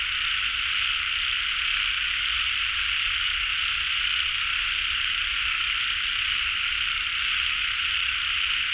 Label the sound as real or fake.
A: real